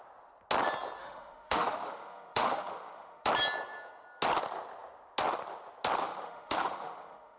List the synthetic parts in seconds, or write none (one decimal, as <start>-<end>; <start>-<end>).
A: 1.0-3.3; 6.0-7.4